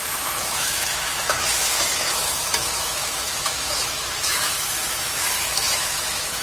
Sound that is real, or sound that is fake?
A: fake